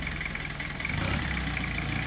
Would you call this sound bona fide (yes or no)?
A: yes